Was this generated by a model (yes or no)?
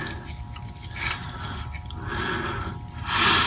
no